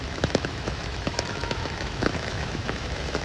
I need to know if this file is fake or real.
fake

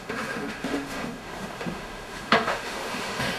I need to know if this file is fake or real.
fake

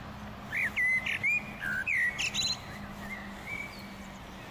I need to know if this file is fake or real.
real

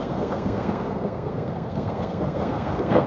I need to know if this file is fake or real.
fake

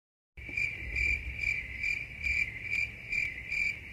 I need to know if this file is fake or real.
real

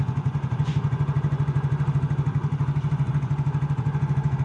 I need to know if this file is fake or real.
fake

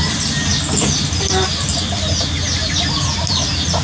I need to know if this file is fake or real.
real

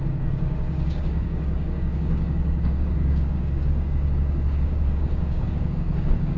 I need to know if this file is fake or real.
fake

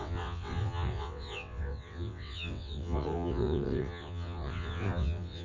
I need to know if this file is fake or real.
fake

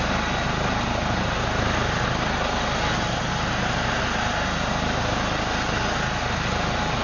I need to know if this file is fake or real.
real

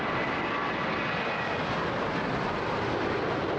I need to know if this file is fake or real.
real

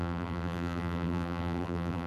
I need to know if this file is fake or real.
fake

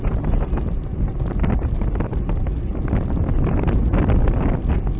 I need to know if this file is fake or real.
real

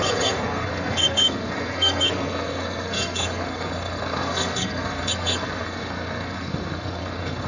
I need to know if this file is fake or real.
fake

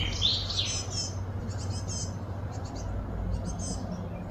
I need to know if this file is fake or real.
real